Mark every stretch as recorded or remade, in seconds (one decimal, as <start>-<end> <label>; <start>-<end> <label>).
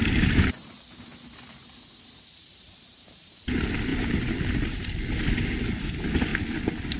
0.0-3.3 remade; 3.3-3.9 recorded; 3.9-4.9 remade; 4.9-7.0 recorded